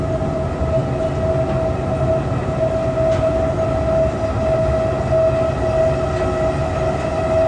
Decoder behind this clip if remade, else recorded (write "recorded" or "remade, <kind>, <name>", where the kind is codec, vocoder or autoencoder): recorded